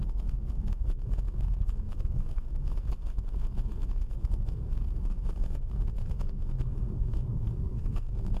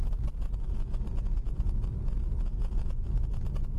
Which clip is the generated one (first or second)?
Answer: first